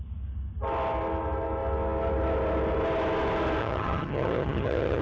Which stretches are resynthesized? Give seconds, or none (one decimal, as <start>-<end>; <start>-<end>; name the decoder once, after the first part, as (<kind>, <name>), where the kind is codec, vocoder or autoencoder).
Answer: 3.6-5.0 (vocoder, HiFi-GAN)